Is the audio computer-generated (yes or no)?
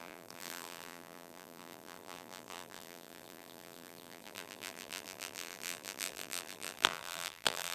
yes